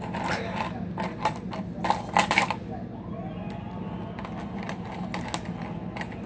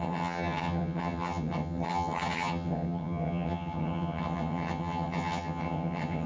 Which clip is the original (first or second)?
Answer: first